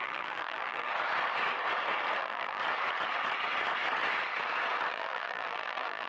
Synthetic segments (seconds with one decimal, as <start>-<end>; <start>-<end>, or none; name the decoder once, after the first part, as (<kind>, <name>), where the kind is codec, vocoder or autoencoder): 0.0-0.9 (vocoder, BigVGAN v2); 2.2-2.6; 4.9-6.1